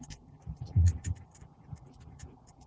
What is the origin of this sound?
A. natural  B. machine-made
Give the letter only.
B